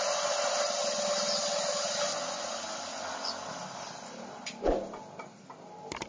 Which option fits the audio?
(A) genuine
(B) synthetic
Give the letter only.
A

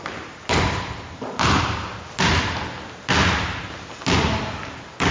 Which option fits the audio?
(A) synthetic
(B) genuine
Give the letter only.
B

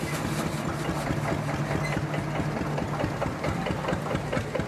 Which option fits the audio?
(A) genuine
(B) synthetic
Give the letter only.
A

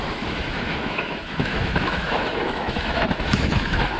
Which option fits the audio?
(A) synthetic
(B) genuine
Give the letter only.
A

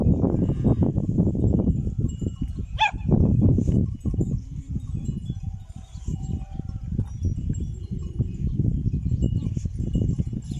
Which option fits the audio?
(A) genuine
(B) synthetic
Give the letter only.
B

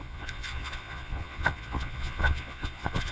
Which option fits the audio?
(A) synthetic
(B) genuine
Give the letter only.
A